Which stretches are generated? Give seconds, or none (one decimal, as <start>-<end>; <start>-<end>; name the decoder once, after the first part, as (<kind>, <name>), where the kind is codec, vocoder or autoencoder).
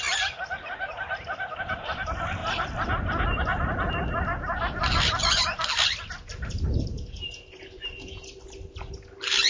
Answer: none